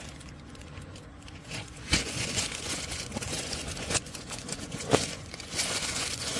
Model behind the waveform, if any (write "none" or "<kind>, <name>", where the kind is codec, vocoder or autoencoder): vocoder, Vocos